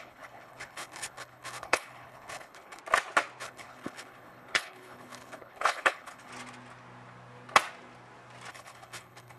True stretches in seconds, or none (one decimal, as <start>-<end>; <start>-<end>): 2.8-3.4; 6.3-8.5